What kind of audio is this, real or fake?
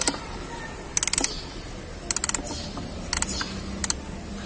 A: real